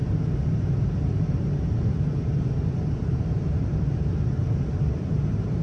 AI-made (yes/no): yes